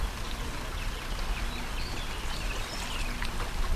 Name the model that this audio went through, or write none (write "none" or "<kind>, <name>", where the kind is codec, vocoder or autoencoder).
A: none